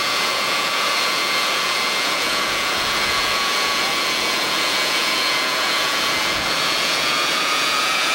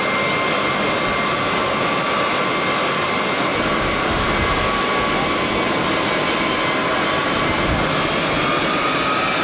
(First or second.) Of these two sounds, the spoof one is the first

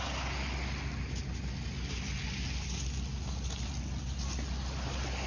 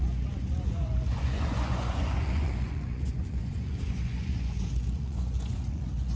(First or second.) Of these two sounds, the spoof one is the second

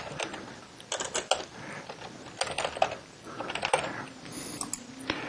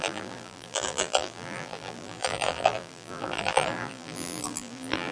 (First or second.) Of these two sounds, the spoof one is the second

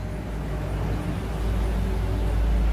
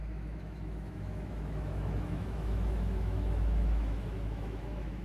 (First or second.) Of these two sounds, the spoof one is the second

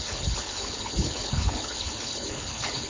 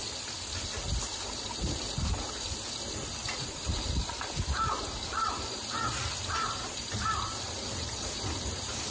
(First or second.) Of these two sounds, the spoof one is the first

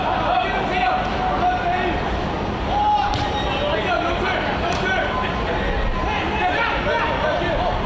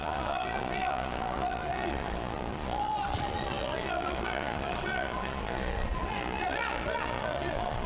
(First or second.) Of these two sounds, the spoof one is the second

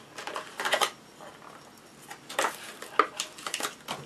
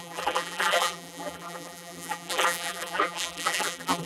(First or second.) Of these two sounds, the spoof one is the second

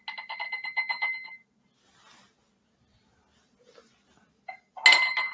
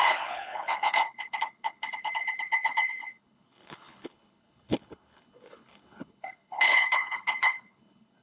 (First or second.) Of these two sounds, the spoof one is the second